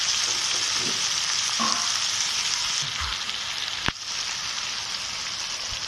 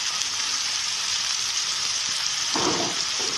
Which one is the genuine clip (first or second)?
first